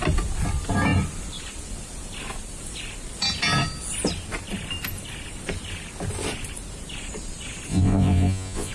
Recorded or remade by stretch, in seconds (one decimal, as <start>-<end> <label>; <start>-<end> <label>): 0.0-7.7 recorded; 7.7-8.7 remade